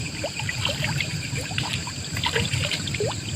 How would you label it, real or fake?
fake